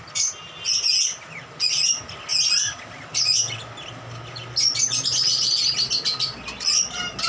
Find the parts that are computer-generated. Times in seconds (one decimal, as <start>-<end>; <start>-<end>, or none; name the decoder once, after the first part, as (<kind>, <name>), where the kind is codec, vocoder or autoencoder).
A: none